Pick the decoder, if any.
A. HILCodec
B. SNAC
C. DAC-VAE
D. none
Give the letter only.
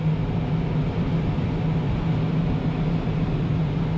D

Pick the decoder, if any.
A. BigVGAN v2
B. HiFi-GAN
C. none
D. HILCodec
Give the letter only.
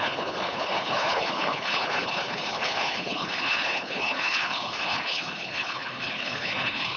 D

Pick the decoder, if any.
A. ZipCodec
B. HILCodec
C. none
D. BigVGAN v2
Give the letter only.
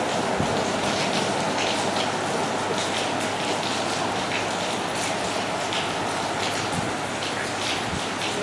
C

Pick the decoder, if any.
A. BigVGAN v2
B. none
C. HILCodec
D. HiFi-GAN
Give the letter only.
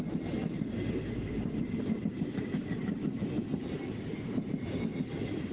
B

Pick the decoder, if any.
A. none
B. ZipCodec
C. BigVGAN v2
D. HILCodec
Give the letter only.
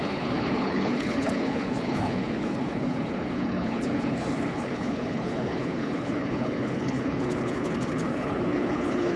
D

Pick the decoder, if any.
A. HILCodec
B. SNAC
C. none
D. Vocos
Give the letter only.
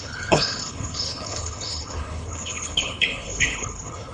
A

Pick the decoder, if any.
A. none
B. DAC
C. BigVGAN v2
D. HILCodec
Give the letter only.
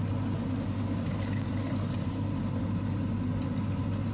A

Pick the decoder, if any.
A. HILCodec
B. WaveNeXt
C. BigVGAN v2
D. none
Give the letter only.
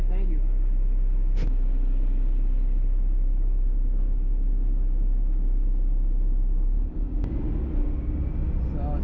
D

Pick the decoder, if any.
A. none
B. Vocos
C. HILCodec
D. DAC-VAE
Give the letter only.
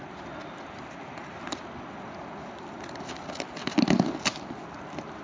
A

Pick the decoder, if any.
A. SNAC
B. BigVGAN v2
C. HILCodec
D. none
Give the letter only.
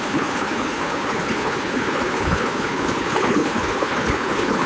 C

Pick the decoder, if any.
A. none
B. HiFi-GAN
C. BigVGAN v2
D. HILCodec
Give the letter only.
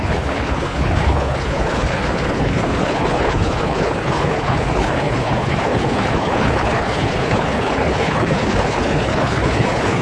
D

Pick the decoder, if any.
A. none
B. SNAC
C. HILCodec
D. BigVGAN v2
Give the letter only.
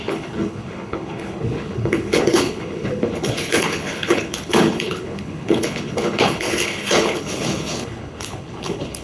C